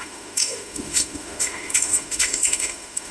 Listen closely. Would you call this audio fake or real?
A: fake